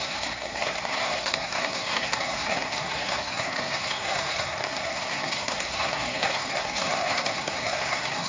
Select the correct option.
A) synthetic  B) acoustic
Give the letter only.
A